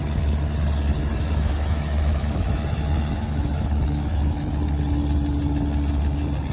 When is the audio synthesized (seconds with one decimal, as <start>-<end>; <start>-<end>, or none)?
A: 0.9-4.5